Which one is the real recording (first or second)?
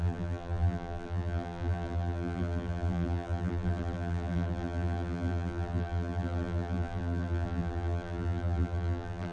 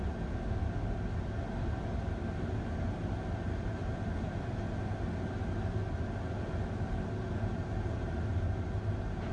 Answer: second